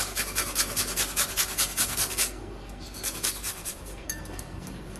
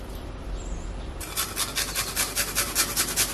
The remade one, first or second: first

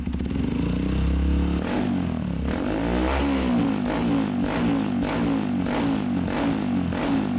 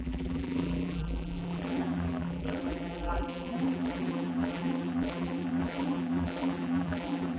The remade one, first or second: second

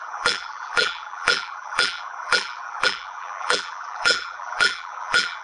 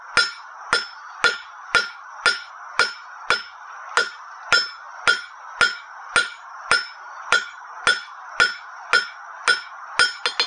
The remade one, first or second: first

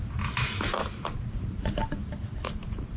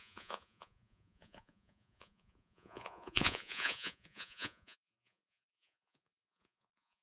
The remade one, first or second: second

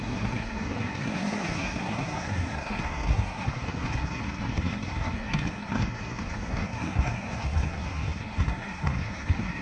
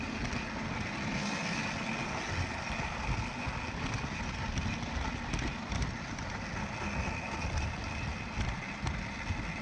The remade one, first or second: first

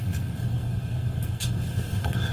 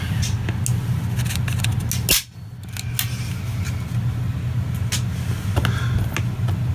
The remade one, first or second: first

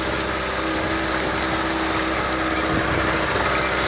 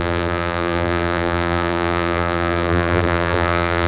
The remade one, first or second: second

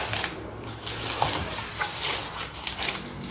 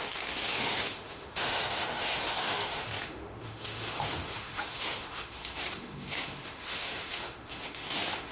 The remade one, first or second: second